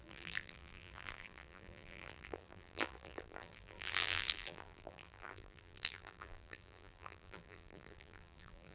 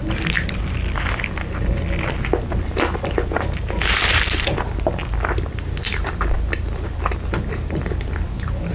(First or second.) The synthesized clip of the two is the first